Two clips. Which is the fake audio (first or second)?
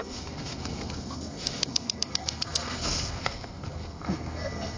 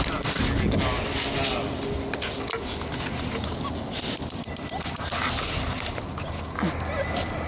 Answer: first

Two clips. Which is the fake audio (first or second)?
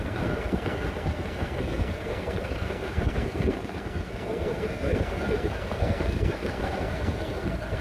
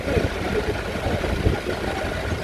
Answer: first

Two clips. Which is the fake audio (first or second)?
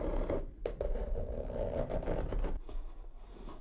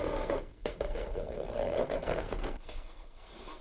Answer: second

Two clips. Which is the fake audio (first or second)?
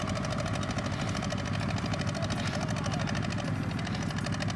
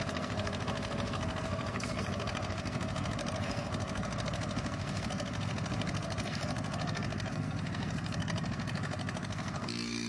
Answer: second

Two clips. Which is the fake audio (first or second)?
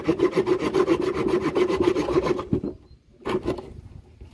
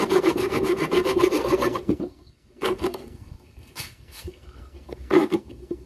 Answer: second